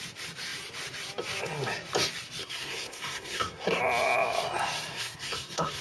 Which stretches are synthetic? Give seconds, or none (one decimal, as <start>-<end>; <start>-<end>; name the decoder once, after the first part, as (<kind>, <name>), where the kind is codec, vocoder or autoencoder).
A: 2.4-3.8 (codec, SNAC); 4.9-5.8

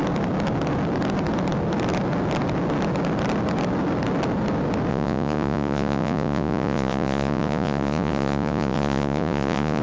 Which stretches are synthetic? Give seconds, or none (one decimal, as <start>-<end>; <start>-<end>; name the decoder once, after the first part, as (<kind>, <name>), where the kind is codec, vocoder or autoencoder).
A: 4.9-9.8 (vocoder, Vocos)

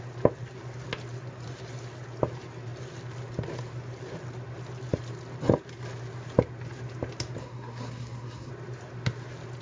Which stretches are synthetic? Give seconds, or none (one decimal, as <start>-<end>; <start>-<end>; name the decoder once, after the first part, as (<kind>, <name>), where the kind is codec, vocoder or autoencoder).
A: 7.4-8.5 (codec, SNAC)

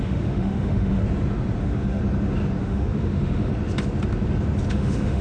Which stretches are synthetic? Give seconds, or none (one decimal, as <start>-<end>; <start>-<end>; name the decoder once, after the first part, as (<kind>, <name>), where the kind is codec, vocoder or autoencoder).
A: 0.0-1.0 (autoencoder, DAC-VAE); 1.6-2.0; 2.6-3.5; 4.7-5.2

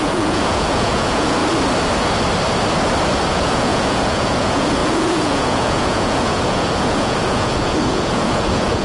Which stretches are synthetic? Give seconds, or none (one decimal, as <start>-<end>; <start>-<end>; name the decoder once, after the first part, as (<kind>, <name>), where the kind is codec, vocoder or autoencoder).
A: 0.0-1.4 (vocoder, Vocos); 3.3-8.8

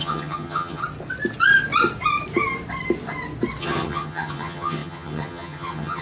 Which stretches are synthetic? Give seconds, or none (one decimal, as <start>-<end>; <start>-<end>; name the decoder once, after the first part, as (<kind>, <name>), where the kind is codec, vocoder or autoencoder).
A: 0.0-0.8 (vocoder, HiFi-GAN); 3.6-6.0